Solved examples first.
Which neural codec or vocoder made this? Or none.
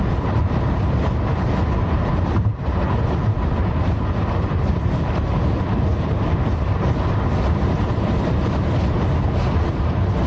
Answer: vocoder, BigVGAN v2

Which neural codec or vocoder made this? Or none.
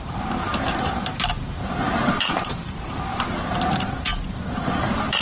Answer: vocoder, BigVGAN v2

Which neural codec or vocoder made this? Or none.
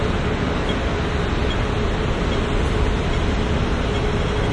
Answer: none